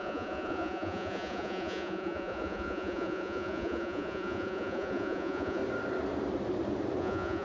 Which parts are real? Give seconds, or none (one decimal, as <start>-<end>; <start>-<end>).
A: 5.6-7.0